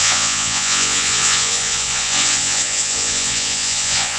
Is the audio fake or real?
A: fake